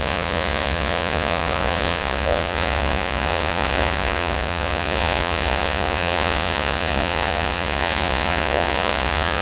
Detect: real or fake fake